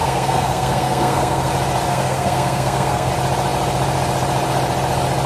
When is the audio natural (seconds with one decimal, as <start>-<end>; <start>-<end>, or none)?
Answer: 1.5-1.9; 3.1-5.3